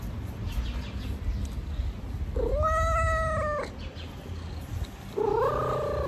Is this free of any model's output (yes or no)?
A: yes